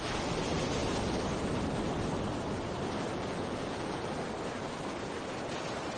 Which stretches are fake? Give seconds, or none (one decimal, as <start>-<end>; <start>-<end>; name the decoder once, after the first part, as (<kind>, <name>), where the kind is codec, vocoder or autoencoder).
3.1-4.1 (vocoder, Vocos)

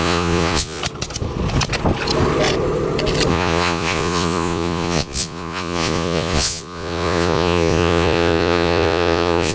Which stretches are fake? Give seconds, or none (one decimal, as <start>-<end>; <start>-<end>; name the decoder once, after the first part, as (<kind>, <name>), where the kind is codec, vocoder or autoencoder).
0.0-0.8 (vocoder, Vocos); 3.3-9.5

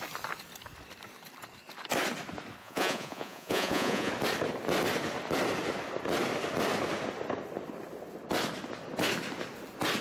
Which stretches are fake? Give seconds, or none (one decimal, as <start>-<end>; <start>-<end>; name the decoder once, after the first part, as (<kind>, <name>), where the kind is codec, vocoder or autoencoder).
2.6-4.1 (vocoder, Vocos)